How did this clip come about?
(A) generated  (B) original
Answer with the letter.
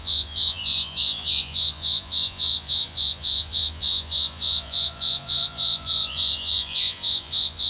A